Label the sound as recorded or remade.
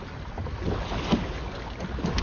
recorded